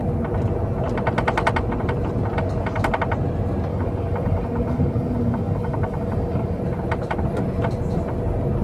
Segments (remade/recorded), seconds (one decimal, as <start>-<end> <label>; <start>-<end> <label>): 0.0-3.7 recorded; 3.7-6.6 remade; 6.6-8.6 recorded